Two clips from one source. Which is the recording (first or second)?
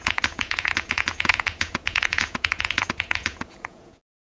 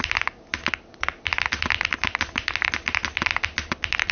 second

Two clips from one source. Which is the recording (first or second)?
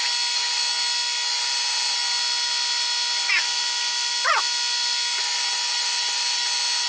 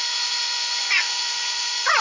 first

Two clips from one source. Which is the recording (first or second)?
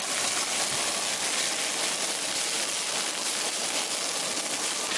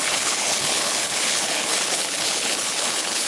first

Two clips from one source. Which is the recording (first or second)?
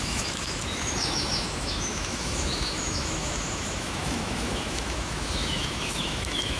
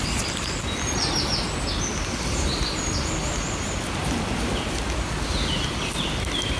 second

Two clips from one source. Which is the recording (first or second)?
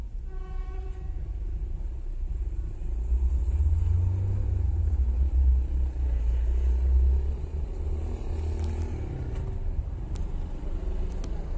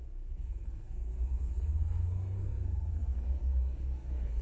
first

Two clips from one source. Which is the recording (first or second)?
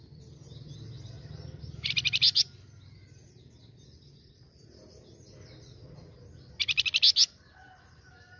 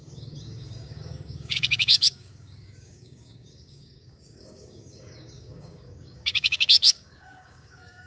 first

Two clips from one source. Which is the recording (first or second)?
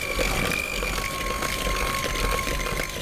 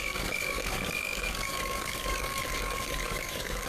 first